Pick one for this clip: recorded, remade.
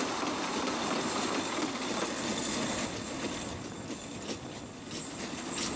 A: recorded